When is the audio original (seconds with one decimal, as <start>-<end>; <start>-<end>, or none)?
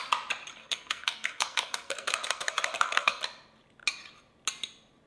0.0-0.6; 3.2-5.1